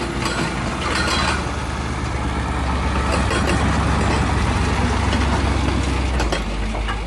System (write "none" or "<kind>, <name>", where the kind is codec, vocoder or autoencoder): none